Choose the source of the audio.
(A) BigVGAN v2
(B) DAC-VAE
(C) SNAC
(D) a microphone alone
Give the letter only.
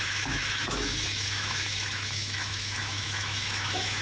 B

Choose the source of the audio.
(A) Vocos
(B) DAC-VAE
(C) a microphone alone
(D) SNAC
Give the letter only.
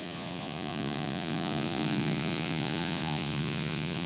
A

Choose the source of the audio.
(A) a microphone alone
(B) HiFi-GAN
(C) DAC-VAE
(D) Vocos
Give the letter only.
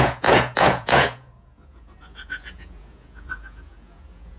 D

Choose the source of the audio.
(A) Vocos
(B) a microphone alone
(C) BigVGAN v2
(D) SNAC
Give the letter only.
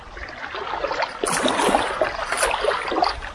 B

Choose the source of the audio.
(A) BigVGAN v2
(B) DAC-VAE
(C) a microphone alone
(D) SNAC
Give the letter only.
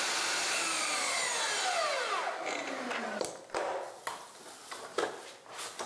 C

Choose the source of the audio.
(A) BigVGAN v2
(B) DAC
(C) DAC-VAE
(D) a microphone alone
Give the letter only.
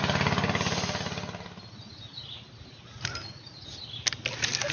D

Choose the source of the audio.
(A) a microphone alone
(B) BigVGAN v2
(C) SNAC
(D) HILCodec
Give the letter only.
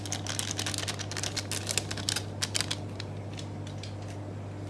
A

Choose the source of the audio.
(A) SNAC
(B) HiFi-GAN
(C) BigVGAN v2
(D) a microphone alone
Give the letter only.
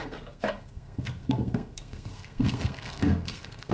A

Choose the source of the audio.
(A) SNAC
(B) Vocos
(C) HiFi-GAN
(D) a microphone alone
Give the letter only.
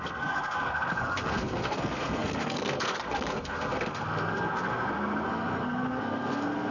A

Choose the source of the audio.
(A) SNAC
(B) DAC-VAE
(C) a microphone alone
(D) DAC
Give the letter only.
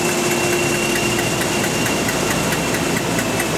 C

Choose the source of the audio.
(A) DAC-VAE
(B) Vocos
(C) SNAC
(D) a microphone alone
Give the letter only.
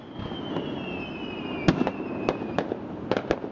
D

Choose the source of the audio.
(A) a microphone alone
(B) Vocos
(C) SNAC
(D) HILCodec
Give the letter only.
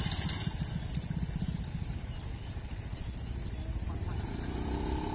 A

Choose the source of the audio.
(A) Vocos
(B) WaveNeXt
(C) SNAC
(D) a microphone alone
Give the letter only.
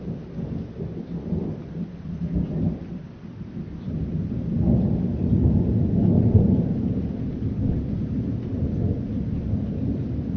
D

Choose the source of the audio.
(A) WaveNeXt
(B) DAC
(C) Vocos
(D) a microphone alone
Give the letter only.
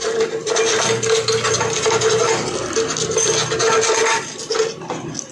D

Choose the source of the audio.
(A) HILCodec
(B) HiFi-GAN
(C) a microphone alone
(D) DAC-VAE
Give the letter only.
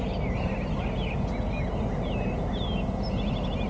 C